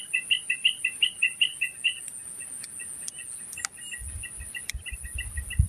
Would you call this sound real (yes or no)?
yes